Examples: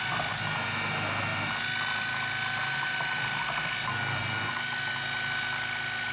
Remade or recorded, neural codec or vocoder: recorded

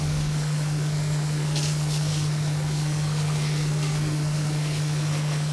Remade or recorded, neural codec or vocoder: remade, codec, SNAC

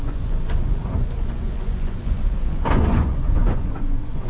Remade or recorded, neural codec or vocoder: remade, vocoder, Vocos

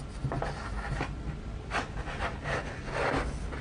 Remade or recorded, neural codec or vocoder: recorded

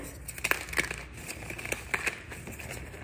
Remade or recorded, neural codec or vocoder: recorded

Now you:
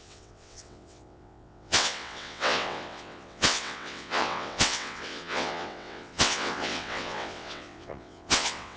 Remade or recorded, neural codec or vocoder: remade, vocoder, WaveNeXt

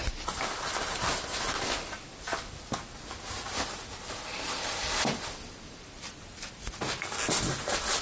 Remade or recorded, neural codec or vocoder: recorded